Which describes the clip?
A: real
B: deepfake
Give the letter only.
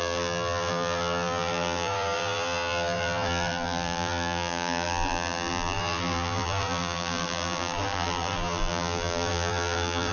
B